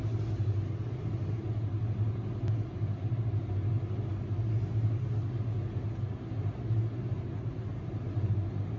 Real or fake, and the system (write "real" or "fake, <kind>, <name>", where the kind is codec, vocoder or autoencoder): real